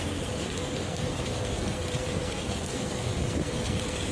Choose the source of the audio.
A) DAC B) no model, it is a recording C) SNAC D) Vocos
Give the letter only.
C